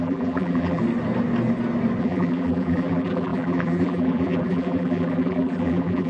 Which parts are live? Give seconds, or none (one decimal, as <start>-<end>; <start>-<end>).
0.8-2.0